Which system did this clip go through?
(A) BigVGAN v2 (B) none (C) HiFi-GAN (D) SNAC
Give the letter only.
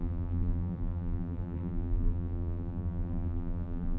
A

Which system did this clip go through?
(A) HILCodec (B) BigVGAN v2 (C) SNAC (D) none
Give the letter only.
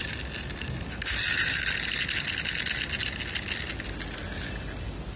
D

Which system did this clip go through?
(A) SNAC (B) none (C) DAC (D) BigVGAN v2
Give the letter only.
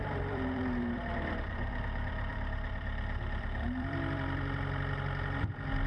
D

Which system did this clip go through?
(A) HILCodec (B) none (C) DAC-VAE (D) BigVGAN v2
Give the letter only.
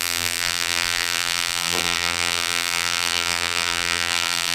D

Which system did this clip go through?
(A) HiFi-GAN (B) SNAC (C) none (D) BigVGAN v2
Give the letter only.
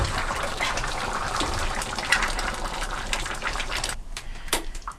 D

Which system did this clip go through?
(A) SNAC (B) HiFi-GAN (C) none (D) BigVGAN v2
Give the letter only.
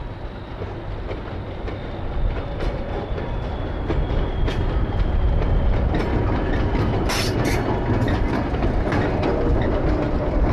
C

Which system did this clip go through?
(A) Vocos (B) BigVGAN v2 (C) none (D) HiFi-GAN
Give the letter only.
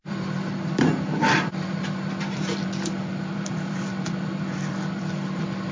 B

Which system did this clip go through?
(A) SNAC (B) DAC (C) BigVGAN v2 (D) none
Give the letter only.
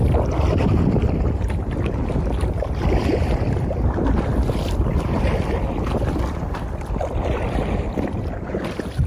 C